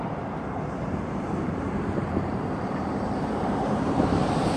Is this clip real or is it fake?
fake